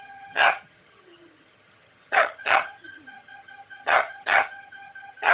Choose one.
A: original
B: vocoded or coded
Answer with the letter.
B